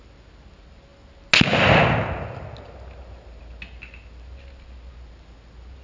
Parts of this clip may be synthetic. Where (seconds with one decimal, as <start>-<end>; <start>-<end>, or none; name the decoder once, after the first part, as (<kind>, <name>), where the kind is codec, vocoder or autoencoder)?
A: none